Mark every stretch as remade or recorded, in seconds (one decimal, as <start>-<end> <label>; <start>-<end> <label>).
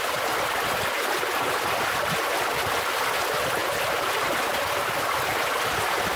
0.0-6.2 recorded